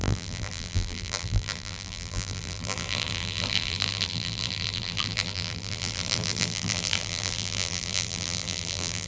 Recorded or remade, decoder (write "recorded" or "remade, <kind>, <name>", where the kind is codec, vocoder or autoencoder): remade, vocoder, BigVGAN v2